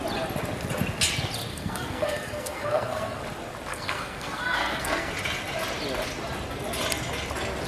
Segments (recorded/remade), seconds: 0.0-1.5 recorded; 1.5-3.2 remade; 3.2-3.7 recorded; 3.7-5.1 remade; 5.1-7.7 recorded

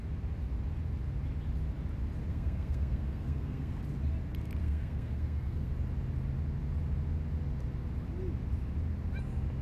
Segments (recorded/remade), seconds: 0.0-2.3 recorded; 2.3-3.8 remade; 3.8-4.6 recorded; 4.6-5.7 remade; 5.7-9.6 recorded

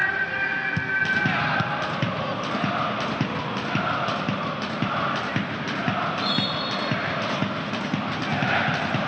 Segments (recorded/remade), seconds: 0.0-9.1 recorded

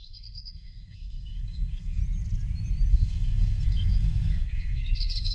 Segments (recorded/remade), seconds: 0.0-2.0 remade; 2.0-2.9 recorded; 2.9-5.3 remade

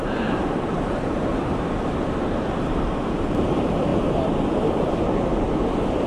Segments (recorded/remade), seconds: 0.0-1.3 remade; 1.3-2.2 recorded; 2.2-3.9 remade; 3.9-4.8 recorded; 4.8-5.3 remade; 5.3-6.1 recorded

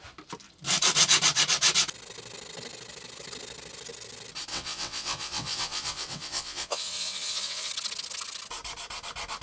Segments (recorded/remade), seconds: 0.0-4.5 recorded; 4.5-7.7 remade; 7.7-9.4 recorded

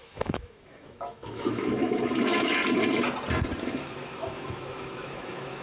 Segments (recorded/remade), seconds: 0.0-2.6 remade; 2.6-3.6 recorded; 3.6-5.6 remade

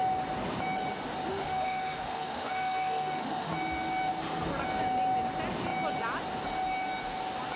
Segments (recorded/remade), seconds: 0.0-1.3 recorded; 1.3-3.5 remade; 3.5-7.6 recorded